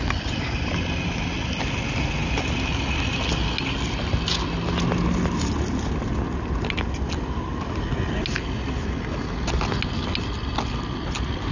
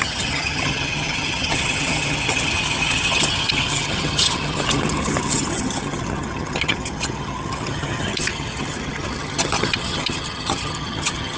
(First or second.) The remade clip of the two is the second